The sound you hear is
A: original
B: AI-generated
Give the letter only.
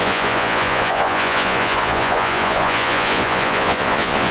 B